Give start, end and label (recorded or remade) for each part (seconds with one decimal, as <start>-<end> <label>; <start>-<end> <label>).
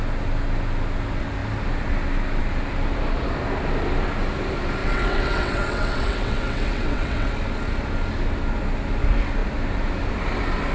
0.0-4.8 recorded; 4.8-7.3 remade; 7.3-10.7 recorded